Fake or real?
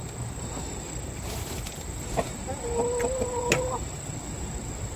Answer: real